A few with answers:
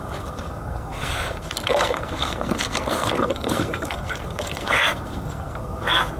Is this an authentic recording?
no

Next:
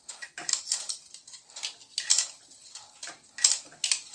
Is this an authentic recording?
yes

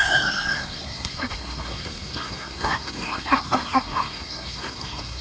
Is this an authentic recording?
no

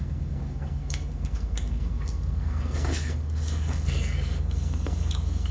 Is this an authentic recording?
no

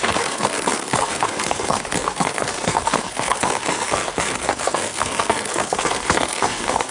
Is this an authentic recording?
no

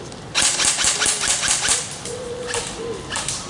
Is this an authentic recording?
yes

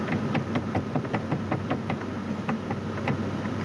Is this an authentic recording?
yes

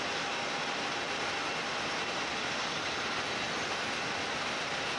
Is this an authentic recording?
yes